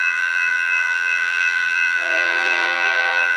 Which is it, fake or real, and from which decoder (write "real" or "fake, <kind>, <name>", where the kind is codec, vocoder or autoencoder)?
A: fake, vocoder, BigVGAN v2